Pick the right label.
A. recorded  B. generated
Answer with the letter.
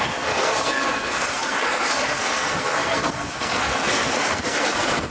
B